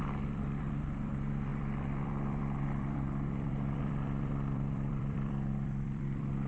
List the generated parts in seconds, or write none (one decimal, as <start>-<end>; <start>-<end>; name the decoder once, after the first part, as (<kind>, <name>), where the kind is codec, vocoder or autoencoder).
0.0-6.5 (vocoder, BigVGAN v2)